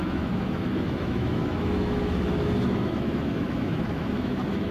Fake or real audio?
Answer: fake